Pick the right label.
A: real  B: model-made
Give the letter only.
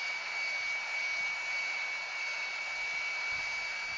A